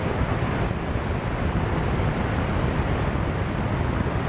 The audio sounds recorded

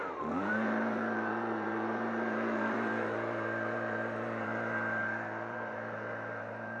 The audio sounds remade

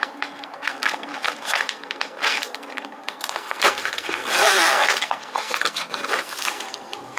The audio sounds remade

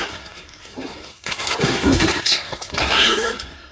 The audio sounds remade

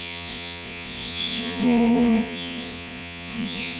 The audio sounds remade